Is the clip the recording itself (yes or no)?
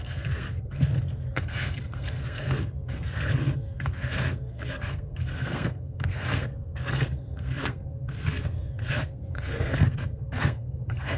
no